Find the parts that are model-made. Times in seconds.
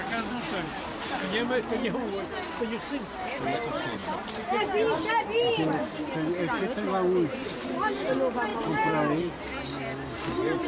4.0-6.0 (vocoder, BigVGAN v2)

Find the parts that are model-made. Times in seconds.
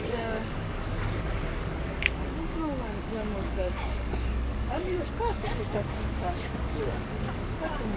0.0-8.0 (codec, DAC)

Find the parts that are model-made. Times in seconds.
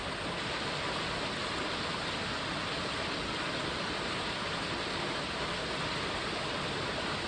none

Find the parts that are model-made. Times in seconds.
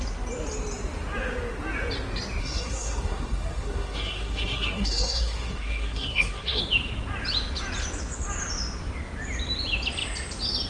2.4-6.6 (codec, SNAC)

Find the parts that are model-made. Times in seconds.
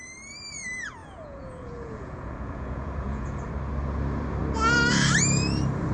1.0-3.5 (vocoder, Vocos)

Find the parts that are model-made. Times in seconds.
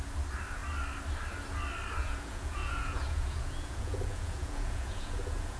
2.0-5.6 (vocoder, Vocos)